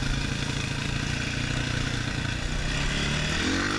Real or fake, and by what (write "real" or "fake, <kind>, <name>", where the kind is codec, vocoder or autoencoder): real